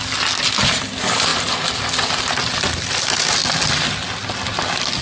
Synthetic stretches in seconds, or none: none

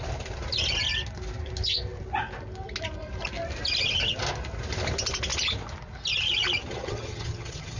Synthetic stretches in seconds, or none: 6.6-7.8 (vocoder, HiFi-GAN)

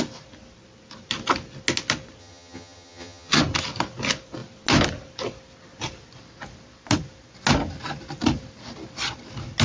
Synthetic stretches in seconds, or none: 2.2-3.4 (vocoder, HiFi-GAN)